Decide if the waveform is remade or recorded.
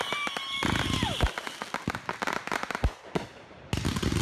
recorded